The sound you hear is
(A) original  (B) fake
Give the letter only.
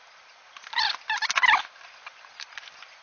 A